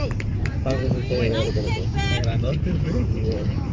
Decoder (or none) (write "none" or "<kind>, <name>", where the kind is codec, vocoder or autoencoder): vocoder, BigVGAN v2